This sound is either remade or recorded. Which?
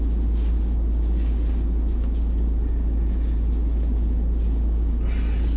recorded